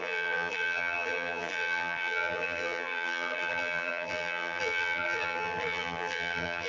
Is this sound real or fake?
fake